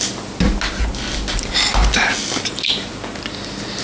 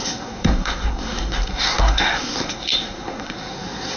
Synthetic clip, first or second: second